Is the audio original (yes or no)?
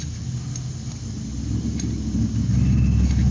yes